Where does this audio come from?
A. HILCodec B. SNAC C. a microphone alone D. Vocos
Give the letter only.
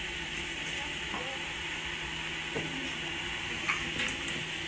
C